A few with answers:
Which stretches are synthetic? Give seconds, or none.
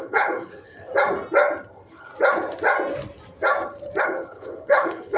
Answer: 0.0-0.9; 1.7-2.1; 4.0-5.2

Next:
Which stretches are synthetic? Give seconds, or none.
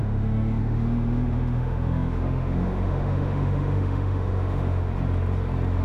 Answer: 0.0-4.9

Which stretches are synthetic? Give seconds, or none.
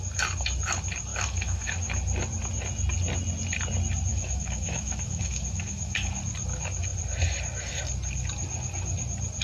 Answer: 1.1-1.7; 4.1-6.1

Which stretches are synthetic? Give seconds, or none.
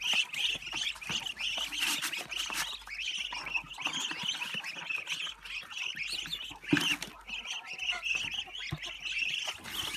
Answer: none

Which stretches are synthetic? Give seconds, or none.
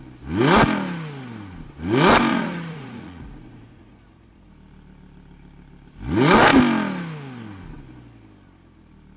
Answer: 2.3-4.5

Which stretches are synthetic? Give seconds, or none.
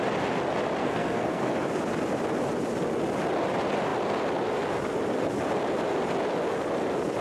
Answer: 0.8-1.5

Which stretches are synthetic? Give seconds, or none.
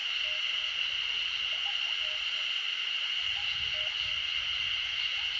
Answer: none